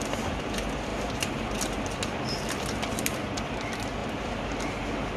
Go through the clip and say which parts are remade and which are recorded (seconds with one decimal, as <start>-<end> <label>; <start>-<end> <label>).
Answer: 0.0-5.2 recorded